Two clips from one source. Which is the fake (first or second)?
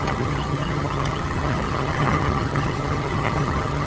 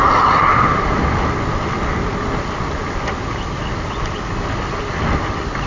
first